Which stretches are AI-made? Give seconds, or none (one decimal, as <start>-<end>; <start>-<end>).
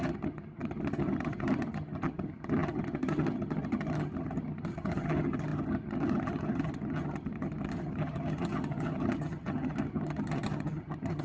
0.0-11.2